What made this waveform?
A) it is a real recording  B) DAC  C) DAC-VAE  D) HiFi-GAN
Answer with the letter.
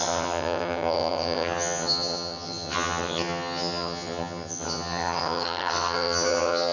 D